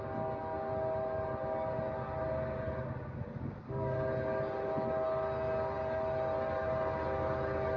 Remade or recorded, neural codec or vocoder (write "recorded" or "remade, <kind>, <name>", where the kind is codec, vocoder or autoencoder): recorded